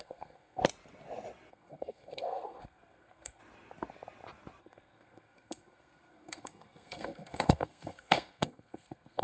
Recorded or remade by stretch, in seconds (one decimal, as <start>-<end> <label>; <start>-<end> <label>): 0.0-0.6 remade; 0.6-1.5 recorded; 1.5-3.4 remade; 3.4-4.6 recorded; 4.6-9.2 remade